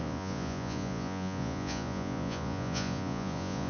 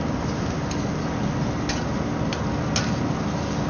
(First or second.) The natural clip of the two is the second